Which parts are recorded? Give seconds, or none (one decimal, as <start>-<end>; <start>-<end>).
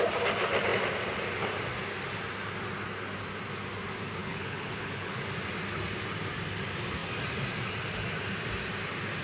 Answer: 0.0-4.2; 5.2-9.2